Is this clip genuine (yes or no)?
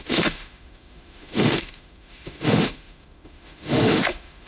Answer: no